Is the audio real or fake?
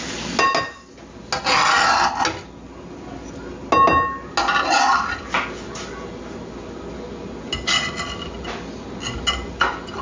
real